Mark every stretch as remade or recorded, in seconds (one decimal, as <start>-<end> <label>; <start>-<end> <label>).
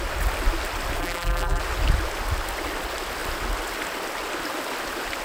0.0-1.0 recorded; 1.0-1.6 remade; 1.6-5.2 recorded